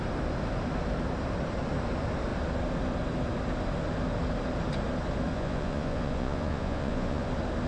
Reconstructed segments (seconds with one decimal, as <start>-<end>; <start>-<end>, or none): 5.3-7.3